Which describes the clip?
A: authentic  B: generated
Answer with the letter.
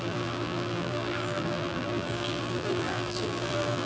B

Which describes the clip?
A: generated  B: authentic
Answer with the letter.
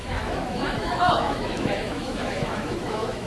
A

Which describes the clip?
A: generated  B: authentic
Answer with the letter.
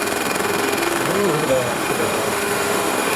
A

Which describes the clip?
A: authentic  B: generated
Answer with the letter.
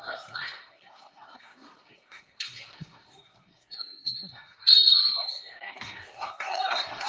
B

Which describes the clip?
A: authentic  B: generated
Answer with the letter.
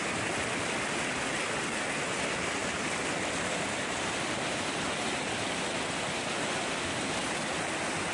A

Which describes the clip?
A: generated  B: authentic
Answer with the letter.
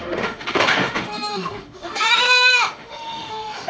A